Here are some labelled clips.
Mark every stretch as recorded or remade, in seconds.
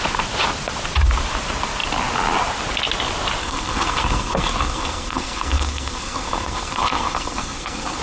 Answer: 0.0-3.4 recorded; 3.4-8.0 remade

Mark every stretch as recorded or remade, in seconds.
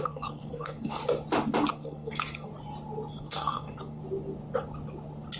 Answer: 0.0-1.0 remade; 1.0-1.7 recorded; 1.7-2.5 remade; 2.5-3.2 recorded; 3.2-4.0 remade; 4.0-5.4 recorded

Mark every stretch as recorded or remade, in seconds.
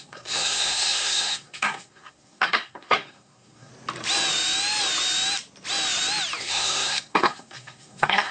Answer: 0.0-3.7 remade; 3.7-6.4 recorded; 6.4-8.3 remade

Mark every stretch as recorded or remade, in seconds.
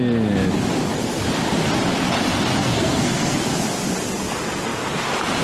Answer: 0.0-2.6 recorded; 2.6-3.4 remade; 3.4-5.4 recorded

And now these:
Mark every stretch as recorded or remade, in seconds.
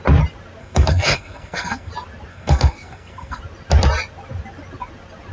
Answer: 0.0-0.6 recorded; 0.6-1.9 remade; 1.9-2.3 recorded; 2.3-3.4 remade; 3.4-5.3 recorded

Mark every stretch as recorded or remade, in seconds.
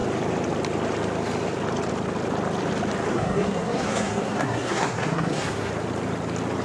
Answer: 0.0-3.1 recorded; 3.1-5.7 remade; 5.7-6.6 recorded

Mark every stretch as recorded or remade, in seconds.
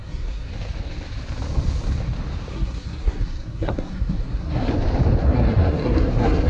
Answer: 0.0-0.5 remade; 0.5-2.5 recorded; 2.5-4.7 remade; 4.7-5.2 recorded; 5.2-6.5 remade